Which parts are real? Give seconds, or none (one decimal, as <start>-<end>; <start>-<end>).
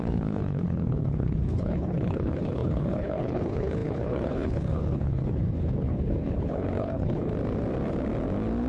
7.3-8.7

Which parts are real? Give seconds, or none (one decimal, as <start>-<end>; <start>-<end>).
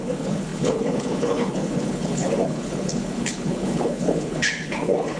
none